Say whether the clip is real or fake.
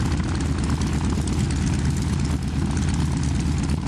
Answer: real